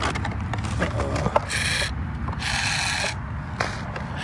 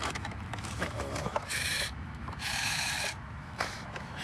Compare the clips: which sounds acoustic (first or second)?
first